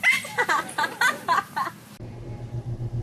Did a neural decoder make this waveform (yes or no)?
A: yes